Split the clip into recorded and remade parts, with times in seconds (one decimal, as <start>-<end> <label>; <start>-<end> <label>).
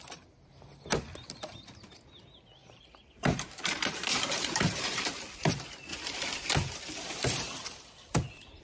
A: 0.0-2.6 recorded; 2.6-5.1 remade; 5.1-5.9 recorded; 5.9-6.5 remade; 6.5-8.6 recorded